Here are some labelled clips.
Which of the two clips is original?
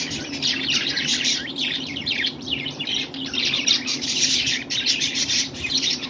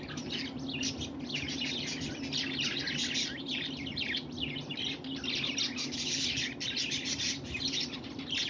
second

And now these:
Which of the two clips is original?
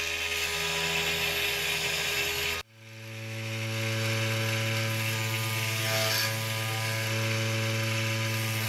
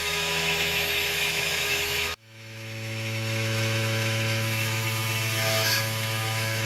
first